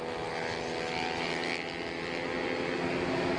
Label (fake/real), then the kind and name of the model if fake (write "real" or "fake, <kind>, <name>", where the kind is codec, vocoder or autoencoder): real